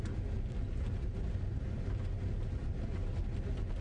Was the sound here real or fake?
real